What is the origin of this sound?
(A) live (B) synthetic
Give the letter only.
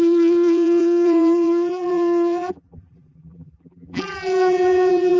B